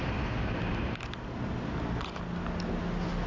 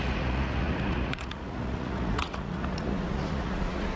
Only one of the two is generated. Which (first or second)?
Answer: second